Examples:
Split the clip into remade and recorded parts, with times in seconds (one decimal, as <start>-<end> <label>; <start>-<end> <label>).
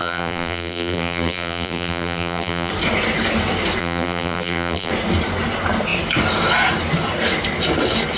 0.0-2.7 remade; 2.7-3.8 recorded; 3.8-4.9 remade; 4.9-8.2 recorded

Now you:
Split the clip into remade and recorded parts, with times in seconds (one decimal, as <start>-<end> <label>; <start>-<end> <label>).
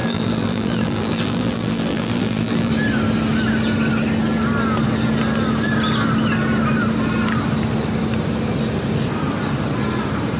0.0-2.7 remade; 2.7-10.4 recorded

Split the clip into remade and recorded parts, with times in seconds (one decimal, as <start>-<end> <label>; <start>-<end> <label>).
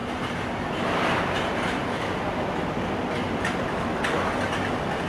0.0-1.8 remade; 1.8-5.1 recorded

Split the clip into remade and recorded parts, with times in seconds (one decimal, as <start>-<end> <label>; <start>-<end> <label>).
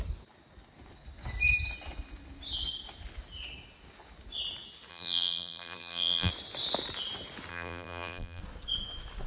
0.0-4.9 recorded; 4.9-6.3 remade; 6.3-7.5 recorded; 7.5-8.4 remade; 8.4-9.3 recorded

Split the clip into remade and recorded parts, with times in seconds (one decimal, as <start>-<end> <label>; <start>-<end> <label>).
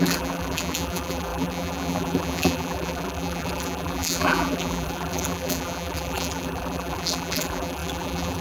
0.0-8.4 remade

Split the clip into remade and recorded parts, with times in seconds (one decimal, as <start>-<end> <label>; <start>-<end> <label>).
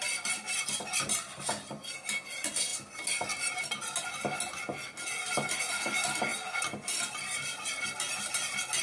0.0-6.3 recorded; 6.3-8.8 remade